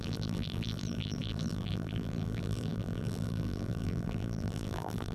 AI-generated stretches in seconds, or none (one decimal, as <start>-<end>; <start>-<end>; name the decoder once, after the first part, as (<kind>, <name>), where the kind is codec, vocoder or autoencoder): 0.0-5.1 (vocoder, BigVGAN v2)